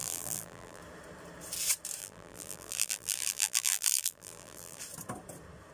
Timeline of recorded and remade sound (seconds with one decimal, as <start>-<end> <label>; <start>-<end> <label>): 0.0-0.8 remade; 0.8-2.0 recorded; 2.0-4.8 remade; 4.8-5.7 recorded